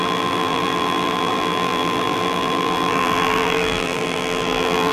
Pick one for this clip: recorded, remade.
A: remade